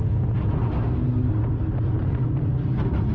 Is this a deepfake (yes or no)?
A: no